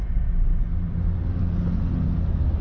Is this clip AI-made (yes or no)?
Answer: no